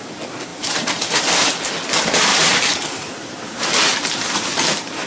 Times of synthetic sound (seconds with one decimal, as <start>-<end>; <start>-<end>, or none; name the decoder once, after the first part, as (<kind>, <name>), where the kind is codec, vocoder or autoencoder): 0.5-1.7 (vocoder, BigVGAN v2); 2.3-5.1

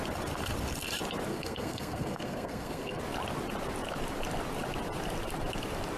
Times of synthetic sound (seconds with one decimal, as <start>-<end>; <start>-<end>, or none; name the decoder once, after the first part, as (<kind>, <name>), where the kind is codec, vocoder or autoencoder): 1.3-3.0 (codec, SNAC)

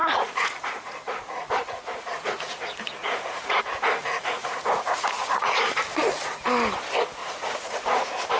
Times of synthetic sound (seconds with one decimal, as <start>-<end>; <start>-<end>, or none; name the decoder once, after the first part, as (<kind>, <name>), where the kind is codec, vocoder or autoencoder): 0.0-2.3 (vocoder, Vocos); 3.0-5.8; 7.2-8.0

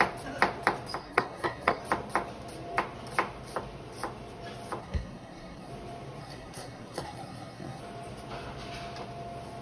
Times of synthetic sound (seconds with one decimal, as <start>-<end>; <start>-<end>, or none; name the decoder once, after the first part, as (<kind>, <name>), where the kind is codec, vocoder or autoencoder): 1.0-1.8 (codec, SNAC); 4.8-5.7; 6.2-7.8

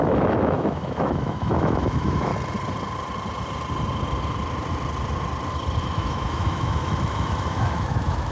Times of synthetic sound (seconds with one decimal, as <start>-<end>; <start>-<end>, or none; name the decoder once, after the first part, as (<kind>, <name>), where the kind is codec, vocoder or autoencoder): 0.0-2.3 (autoencoder, DAC-VAE); 5.8-8.3